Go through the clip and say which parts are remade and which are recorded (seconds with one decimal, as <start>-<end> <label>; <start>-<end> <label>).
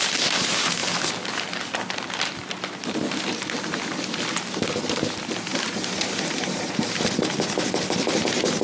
0.0-8.6 recorded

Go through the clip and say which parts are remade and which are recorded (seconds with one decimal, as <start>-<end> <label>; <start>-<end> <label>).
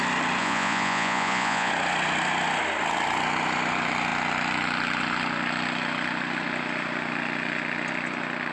0.0-0.4 recorded; 0.4-1.7 remade; 1.7-8.5 recorded